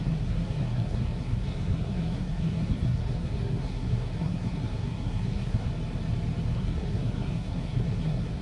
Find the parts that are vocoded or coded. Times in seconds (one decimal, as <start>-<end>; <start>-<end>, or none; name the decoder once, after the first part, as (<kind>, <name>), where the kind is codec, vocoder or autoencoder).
0.0-5.7 (codec, SNAC); 6.5-8.4